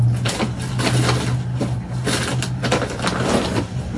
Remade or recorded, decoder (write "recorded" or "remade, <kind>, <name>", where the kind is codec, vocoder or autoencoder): recorded